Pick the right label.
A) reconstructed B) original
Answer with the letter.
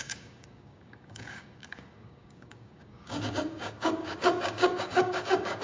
A